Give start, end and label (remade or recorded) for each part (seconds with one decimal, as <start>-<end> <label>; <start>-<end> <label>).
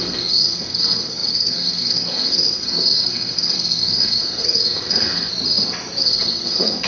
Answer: 0.0-5.3 remade; 5.3-6.0 recorded; 6.0-6.9 remade